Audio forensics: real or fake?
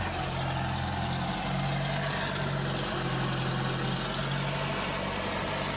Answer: real